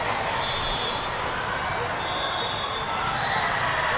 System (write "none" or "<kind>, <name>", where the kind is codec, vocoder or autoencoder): none